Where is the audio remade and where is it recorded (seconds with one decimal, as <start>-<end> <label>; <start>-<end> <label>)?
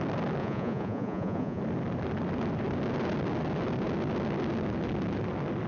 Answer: 0.0-0.4 recorded; 0.4-1.6 remade; 1.6-5.7 recorded